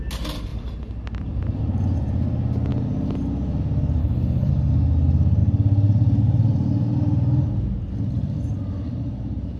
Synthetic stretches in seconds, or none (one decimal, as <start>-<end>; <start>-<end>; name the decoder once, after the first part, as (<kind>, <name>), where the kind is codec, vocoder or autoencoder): 4.0-4.5 (codec, HILCodec)